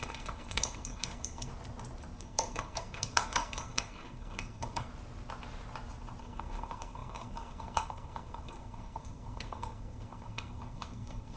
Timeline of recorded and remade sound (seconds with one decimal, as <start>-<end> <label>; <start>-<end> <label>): 0.0-1.5 remade; 1.5-2.2 recorded; 2.2-4.9 remade; 4.9-6.2 recorded; 6.2-11.4 remade